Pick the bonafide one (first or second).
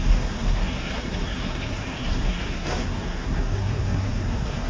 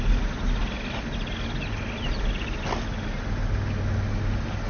second